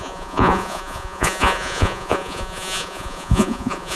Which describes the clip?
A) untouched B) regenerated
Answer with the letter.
B